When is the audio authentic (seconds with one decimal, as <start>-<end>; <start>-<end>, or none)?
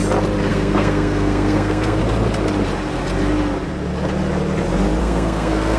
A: 0.0-0.5; 2.0-5.0